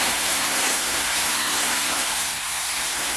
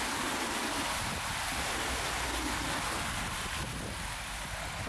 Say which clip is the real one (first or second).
second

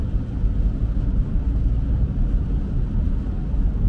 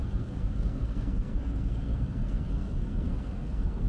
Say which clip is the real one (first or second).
first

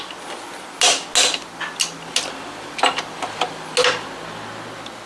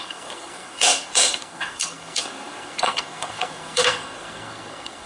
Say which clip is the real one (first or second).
first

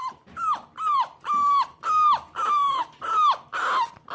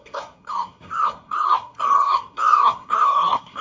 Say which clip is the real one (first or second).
first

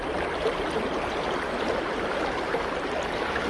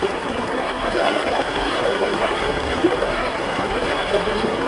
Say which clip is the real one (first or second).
first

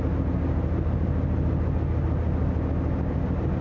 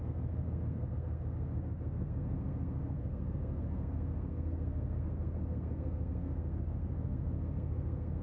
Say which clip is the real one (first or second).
first